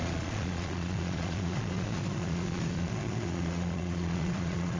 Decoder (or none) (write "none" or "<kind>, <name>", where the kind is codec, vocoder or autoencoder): vocoder, Vocos